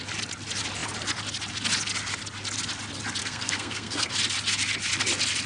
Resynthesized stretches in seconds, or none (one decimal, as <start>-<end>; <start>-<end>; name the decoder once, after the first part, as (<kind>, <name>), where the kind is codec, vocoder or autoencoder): 3.2-4.1 (codec, SNAC)